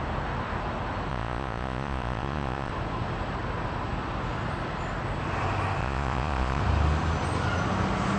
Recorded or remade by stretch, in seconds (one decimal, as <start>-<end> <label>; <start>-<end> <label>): 0.0-1.1 recorded; 1.1-2.7 remade; 2.7-5.8 recorded; 5.8-6.6 remade; 6.6-8.2 recorded